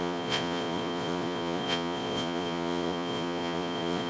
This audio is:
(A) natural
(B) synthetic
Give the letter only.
B